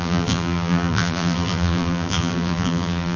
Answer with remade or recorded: remade